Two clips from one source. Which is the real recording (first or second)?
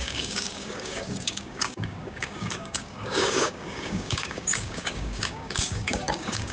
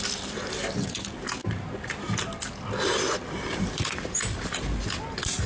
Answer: second